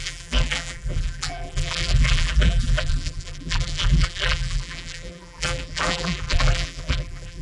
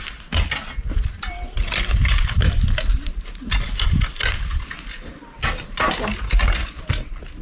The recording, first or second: second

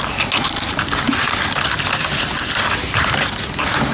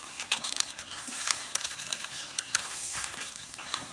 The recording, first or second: first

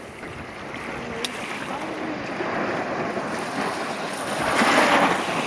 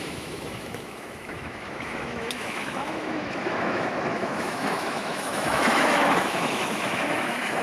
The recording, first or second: first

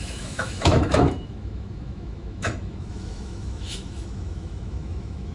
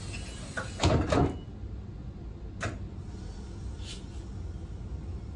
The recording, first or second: second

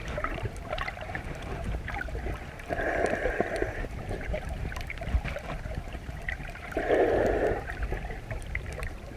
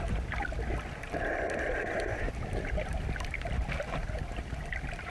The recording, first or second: second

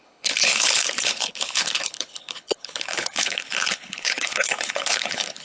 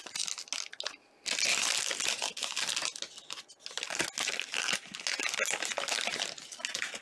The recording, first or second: second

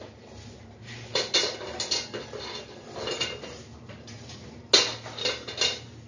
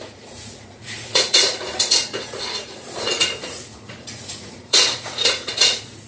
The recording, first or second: first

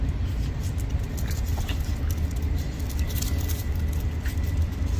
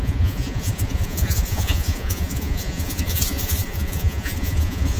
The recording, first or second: first